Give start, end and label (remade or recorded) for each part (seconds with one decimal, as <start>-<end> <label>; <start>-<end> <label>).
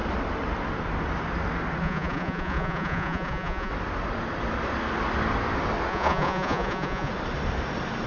0.0-1.8 recorded; 1.8-3.7 remade; 3.7-5.9 recorded; 5.9-7.1 remade; 7.1-8.1 recorded